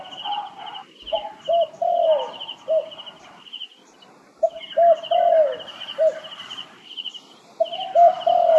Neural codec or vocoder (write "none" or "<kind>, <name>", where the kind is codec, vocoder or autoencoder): none